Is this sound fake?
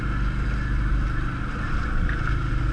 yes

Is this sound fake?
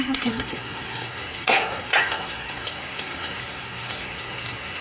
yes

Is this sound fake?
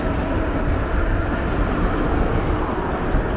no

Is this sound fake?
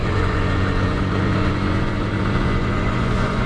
yes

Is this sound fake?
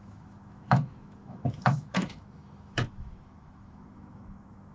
yes